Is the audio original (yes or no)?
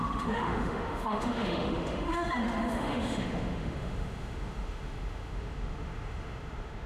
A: no